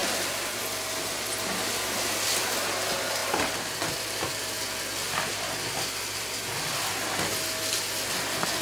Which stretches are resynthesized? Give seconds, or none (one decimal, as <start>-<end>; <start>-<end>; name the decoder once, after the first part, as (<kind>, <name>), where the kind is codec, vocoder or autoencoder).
none